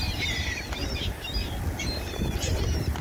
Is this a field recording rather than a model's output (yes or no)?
yes